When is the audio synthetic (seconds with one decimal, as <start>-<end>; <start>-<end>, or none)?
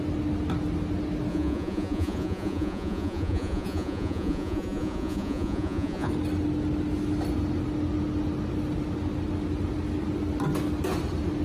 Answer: 1.3-6.1